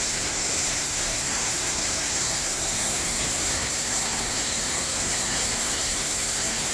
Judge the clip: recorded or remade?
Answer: remade